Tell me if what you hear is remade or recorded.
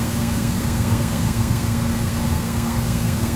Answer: remade